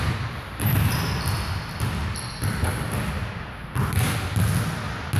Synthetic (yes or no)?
no